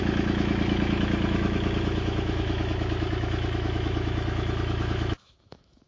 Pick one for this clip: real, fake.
fake